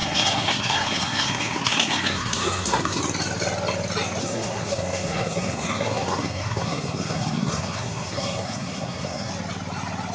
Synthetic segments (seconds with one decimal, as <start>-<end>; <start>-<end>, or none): 0.0-3.0; 4.2-9.3

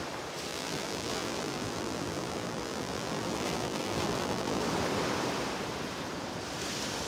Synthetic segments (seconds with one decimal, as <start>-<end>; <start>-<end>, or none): 0.5-4.6

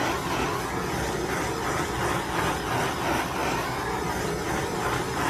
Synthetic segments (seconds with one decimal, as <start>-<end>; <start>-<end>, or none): none

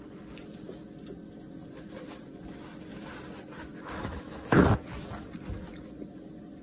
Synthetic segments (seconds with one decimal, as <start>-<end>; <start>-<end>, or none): 3.6-4.6

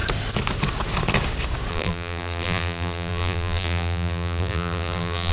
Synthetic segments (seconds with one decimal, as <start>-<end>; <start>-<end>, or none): 1.7-5.3

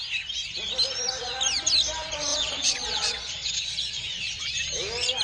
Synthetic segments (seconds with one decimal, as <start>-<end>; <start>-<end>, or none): 2.3-4.5

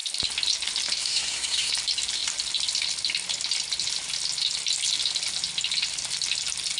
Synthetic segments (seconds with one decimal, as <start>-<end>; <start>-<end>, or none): 1.0-1.7